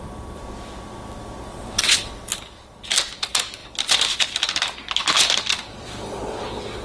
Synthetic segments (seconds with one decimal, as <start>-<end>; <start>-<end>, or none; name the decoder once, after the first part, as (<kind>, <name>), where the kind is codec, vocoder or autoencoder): 1.5-2.1 (vocoder, WaveNeXt)